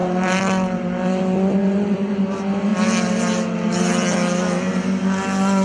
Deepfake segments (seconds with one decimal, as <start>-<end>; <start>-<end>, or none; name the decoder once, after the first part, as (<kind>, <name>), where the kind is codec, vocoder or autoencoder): 0.0-1.2 (vocoder, BigVGAN v2); 1.6-2.1; 2.7-4.7